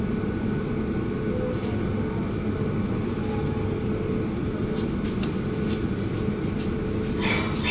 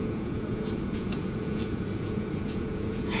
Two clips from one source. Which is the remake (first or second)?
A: second